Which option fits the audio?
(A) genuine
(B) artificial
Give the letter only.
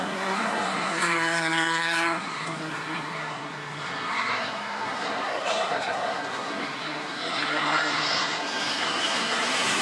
B